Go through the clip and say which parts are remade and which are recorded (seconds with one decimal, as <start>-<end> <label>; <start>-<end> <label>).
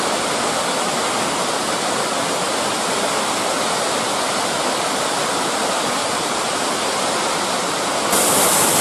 0.0-6.0 recorded; 6.0-6.7 remade; 6.7-8.8 recorded